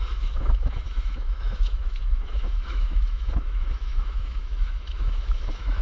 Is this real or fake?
fake